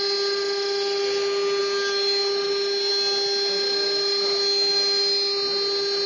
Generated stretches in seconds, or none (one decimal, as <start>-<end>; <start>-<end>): none